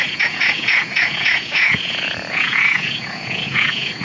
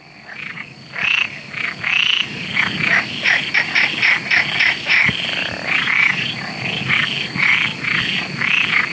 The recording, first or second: second